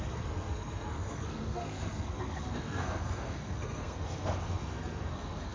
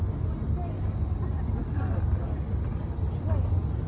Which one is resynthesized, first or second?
first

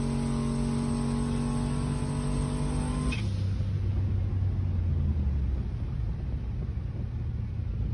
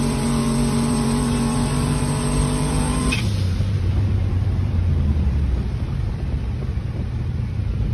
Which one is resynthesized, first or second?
second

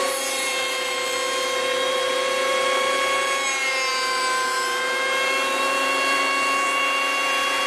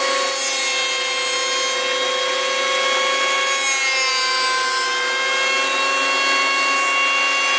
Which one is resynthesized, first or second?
first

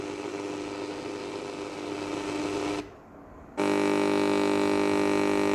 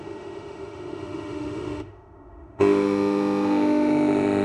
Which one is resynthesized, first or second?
second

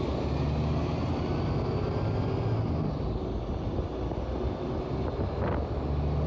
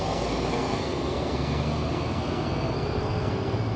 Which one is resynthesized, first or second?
second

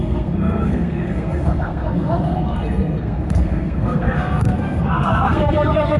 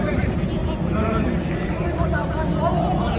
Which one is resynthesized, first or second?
first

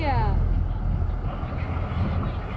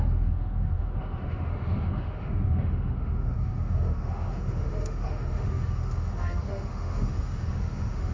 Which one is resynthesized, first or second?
second